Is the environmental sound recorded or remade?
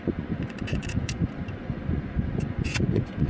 remade